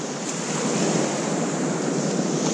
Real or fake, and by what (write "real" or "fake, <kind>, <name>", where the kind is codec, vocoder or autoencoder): real